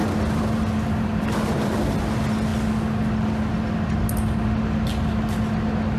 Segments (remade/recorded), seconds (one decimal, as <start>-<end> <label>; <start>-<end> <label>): 0.0-2.0 remade; 2.0-6.0 recorded